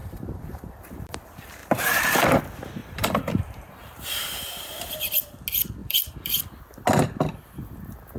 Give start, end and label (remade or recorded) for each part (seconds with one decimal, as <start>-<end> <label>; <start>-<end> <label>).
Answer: 0.0-0.8 remade; 0.8-1.6 recorded; 1.6-2.4 remade; 2.4-2.8 recorded; 2.8-4.9 remade; 4.9-5.8 recorded; 5.8-6.4 remade; 6.4-8.2 recorded